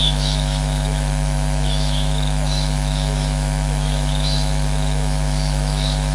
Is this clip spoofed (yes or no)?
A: yes